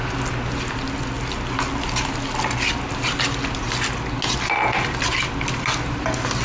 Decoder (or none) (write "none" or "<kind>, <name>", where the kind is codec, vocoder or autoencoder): none